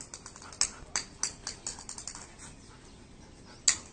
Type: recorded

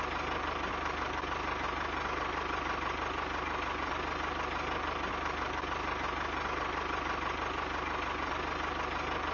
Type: recorded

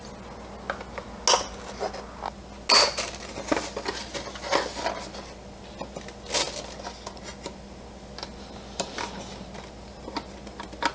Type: recorded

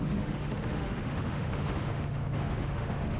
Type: remade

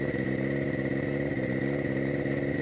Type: recorded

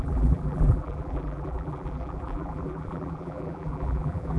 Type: remade